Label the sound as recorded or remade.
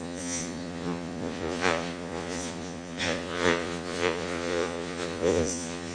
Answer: remade